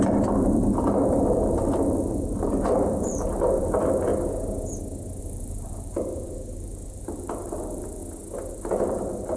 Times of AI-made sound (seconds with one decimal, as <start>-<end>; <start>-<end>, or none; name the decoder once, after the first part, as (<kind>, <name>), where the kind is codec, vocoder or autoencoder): 0.0-4.1 (vocoder, BigVGAN v2); 5.2-8.0; 8.5-9.4